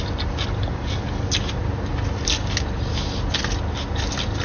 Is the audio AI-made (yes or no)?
no